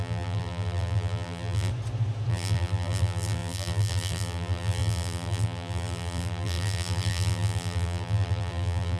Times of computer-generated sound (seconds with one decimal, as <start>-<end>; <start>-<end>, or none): 0.0-1.7; 2.3-9.0